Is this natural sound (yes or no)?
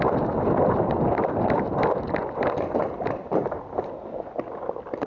yes